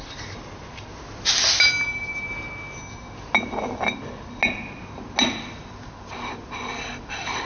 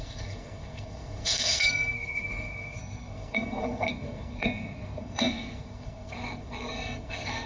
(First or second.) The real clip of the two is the first